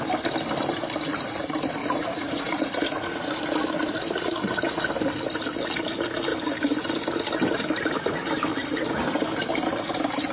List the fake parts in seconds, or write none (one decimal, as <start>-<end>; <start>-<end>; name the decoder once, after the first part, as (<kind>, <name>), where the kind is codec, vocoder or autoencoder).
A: 1.8-3.4 (vocoder, Vocos); 8.5-9.0